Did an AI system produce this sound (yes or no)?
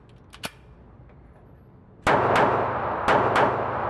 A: no